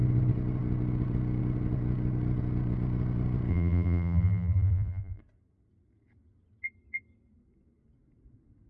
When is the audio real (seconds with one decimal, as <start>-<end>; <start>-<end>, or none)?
0.0-3.5; 5.2-8.7